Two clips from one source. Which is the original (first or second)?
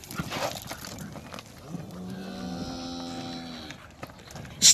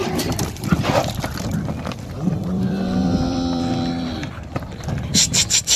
first